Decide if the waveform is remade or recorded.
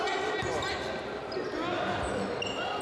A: recorded